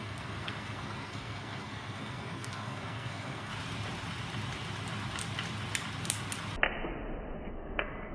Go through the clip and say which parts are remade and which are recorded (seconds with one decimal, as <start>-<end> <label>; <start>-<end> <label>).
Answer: 0.0-3.5 remade; 3.5-7.5 recorded; 7.5-8.1 remade